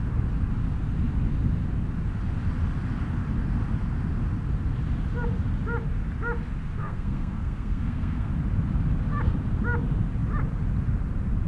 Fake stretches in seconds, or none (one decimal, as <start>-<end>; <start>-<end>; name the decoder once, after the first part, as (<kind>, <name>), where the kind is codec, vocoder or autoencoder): 6.8-8.3 (codec, SNAC)